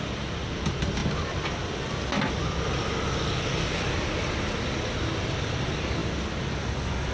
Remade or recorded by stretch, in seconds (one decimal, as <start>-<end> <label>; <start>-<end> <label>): 0.0-7.1 recorded